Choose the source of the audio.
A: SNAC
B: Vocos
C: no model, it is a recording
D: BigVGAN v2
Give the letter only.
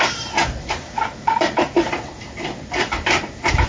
D